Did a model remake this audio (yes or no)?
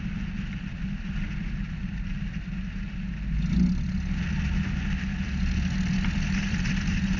no